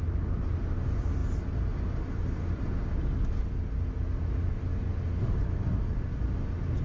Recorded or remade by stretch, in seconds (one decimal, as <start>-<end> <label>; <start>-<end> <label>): 0.0-6.8 recorded